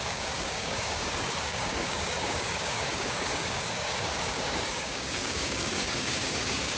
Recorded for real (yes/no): no